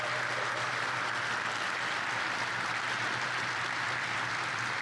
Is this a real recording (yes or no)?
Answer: yes